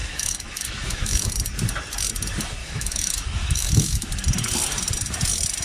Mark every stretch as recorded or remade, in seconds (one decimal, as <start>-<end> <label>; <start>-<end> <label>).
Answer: 0.0-1.3 remade; 1.3-2.6 recorded; 2.6-4.1 remade; 4.1-5.6 recorded